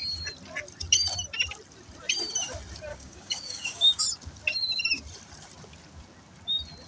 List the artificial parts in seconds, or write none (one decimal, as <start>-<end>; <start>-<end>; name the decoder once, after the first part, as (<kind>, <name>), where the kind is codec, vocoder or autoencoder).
2.9-4.0 (codec, DAC)